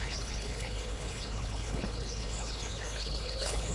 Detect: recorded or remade remade